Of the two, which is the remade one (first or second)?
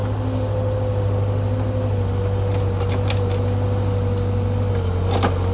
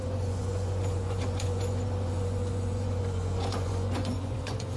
second